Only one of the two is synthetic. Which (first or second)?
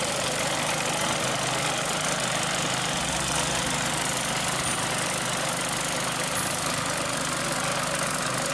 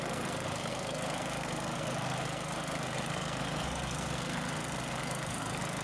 second